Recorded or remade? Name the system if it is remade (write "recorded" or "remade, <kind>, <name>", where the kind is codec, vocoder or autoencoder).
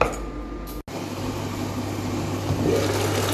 recorded